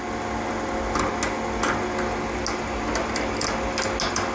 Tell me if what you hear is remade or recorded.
recorded